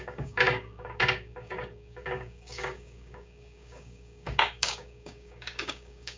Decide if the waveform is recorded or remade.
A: remade